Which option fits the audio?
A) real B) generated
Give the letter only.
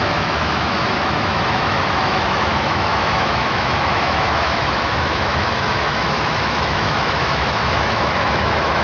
B